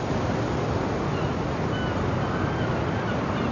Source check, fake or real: real